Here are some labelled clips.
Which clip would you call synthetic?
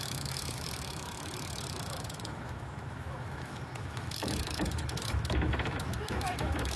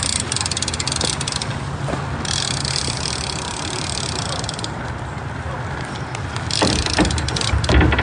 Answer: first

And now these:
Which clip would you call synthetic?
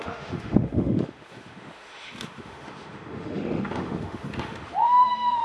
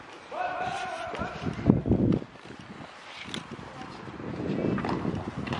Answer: first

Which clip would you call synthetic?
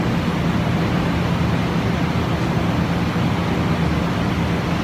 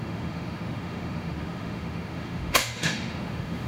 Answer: second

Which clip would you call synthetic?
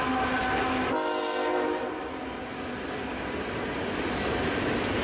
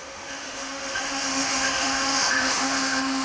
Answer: second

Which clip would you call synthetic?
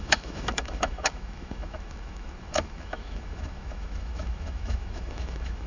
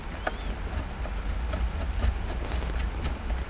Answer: first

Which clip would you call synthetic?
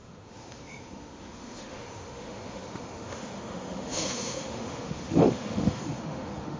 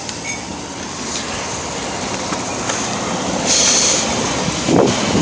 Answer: first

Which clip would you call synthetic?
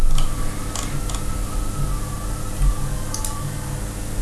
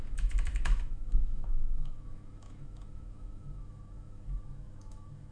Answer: second